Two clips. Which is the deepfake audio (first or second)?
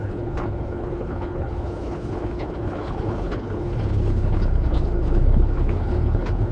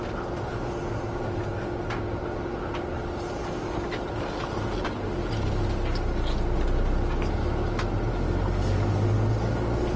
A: first